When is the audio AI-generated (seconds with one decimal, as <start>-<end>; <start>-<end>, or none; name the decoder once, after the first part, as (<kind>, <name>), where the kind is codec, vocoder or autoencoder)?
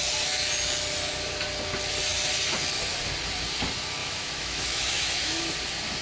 4.0-5.5 (autoencoder, DAC-VAE)